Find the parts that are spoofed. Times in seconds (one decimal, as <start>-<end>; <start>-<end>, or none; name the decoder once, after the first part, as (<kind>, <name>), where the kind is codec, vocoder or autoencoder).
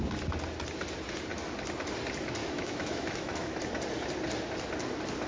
2.4-3.6 (autoencoder, DAC-VAE)